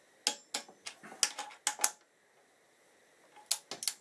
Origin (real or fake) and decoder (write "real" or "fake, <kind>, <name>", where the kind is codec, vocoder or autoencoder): real